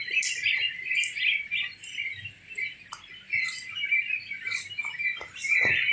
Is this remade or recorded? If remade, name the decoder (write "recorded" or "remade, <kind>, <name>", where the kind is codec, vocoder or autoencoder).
recorded